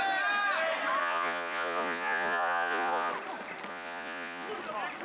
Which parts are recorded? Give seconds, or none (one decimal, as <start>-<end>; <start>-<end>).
0.0-1.0; 3.1-3.7; 4.5-5.0